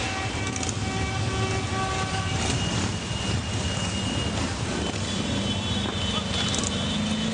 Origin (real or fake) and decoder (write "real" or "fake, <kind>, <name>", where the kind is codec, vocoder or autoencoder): real